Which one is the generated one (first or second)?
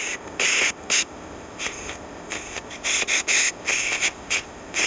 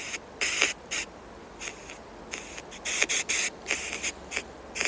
first